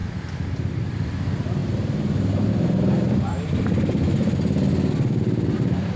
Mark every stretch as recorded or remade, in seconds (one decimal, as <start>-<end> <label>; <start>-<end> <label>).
0.0-4.2 remade; 4.2-4.9 recorded; 4.9-6.0 remade